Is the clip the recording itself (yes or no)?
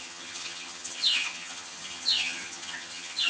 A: no